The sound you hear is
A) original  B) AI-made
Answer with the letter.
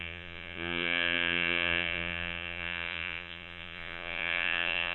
B